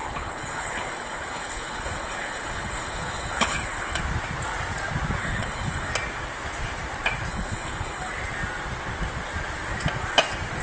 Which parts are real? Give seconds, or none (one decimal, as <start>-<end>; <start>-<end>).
4.0-5.2; 5.9-7.3; 8.1-10.6